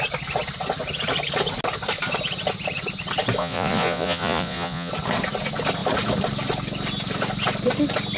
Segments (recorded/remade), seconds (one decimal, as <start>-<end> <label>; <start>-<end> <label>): 0.0-3.4 recorded; 3.4-4.9 remade; 4.9-8.2 recorded